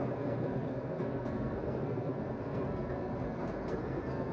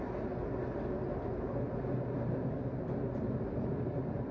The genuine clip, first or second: second